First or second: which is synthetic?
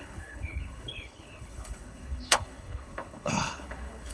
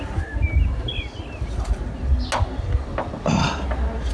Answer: first